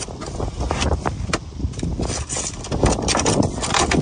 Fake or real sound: real